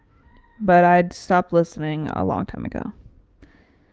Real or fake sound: fake